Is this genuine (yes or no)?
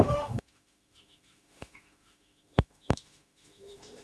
no